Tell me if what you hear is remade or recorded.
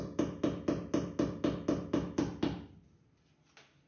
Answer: recorded